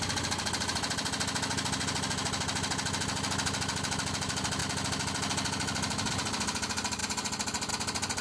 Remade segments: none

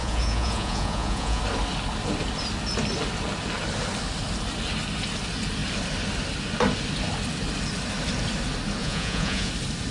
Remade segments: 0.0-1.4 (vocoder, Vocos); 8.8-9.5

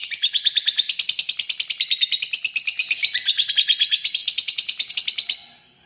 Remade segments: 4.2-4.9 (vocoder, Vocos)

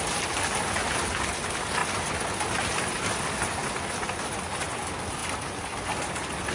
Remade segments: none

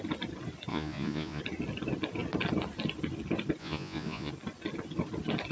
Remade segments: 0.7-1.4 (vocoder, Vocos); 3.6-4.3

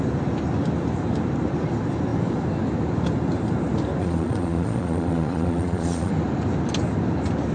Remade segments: 4.0-6.1 (vocoder, Vocos)

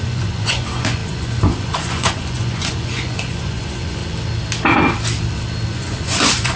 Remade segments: 0.0-4.0 (vocoder, Vocos); 5.7-6.6

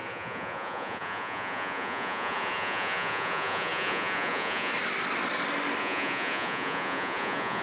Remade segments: 0.0-4.7 (vocoder, Vocos); 5.8-7.6